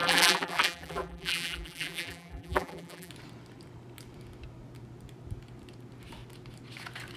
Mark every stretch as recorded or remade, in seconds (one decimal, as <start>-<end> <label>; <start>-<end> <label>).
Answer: 0.0-3.1 remade; 3.1-7.2 recorded